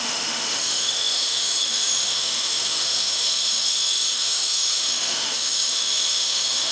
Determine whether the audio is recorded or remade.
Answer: remade